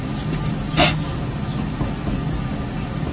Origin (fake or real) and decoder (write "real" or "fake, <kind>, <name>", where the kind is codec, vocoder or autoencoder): real